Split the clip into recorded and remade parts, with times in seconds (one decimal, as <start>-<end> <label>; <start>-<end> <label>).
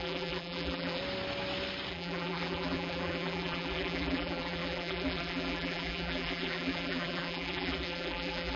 0.0-1.0 remade; 1.0-1.9 recorded; 1.9-8.6 remade